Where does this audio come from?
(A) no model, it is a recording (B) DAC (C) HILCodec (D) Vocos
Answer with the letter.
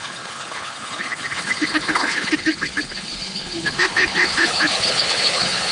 C